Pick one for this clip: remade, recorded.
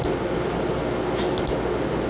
recorded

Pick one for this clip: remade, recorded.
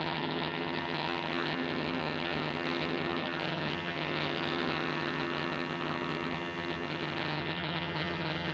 remade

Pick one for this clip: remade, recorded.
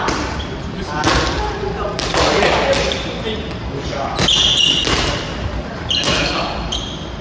recorded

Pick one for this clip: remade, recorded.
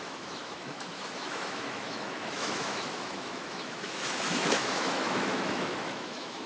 remade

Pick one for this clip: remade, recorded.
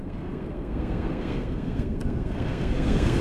remade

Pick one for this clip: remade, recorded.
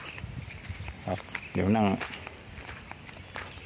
recorded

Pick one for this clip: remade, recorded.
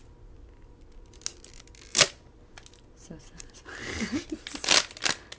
recorded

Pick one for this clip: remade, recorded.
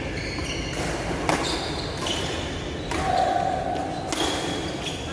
recorded